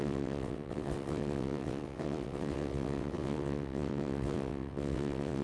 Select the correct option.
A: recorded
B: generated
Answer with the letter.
B